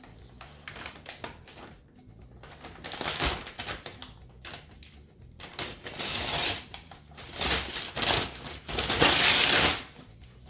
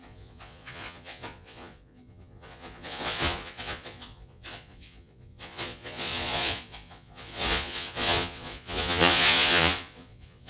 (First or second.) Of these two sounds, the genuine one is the first